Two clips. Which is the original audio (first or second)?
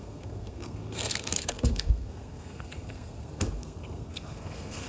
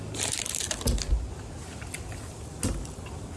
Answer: second